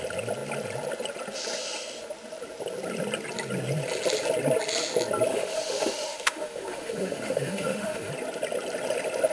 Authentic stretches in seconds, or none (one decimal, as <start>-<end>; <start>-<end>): 0.0-5.3; 8.1-9.3